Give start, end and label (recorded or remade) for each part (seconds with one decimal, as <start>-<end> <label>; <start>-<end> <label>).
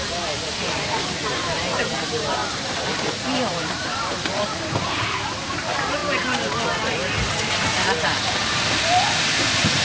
0.0-2.4 remade; 2.4-3.1 recorded; 3.1-6.0 remade; 6.0-8.3 recorded; 8.3-9.8 remade